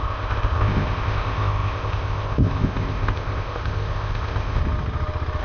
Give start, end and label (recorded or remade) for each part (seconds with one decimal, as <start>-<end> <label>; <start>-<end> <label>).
0.0-4.6 remade; 4.6-5.4 recorded